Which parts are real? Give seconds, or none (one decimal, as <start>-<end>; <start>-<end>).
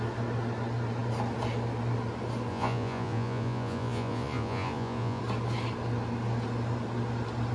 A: 0.0-2.5; 5.2-7.5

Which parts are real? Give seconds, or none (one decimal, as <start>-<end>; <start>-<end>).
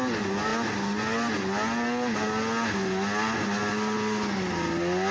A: 0.0-5.1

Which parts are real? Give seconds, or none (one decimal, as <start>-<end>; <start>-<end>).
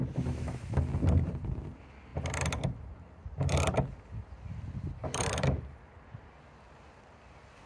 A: 0.0-5.0; 5.9-7.7